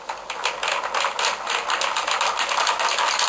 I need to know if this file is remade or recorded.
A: recorded